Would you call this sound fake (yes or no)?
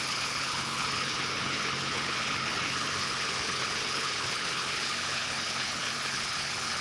yes